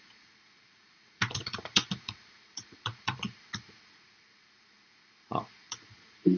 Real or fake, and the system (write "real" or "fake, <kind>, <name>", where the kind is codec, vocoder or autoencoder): fake, vocoder, Vocos